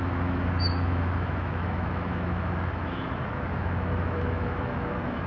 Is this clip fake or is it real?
fake